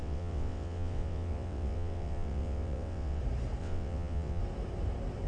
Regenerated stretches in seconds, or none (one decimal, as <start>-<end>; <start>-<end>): 0.0-3.2; 3.6-4.4